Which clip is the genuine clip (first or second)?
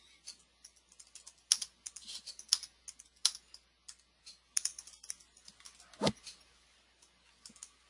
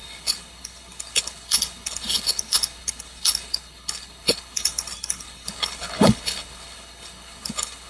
first